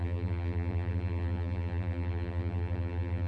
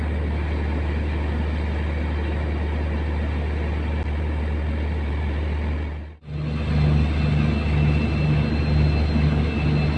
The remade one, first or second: first